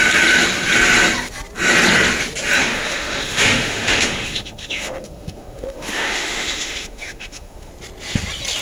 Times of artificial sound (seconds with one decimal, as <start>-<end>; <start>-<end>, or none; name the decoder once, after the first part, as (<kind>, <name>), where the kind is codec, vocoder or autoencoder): 2.6-7.7 (autoencoder, DAC-VAE)